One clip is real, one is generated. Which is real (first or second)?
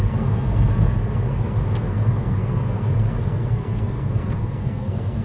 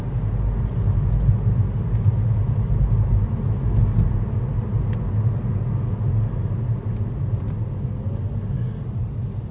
second